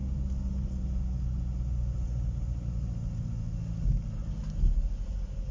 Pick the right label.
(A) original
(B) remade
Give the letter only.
A